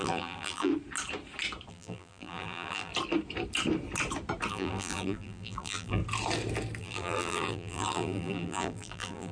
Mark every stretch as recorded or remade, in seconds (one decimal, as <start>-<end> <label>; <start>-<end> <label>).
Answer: 0.0-0.7 remade; 0.7-1.7 recorded; 1.7-2.9 remade; 2.9-4.5 recorded; 4.5-6.0 remade; 6.0-6.8 recorded; 6.8-9.3 remade